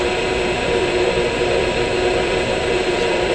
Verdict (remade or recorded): remade